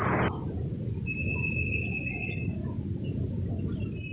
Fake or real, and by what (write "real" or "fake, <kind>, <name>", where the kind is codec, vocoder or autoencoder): real